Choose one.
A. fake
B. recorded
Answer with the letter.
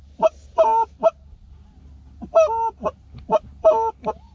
B